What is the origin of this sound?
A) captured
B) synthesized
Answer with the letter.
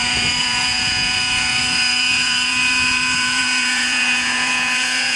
B